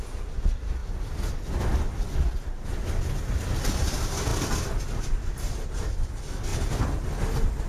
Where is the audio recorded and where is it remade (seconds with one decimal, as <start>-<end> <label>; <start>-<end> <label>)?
0.0-7.7 recorded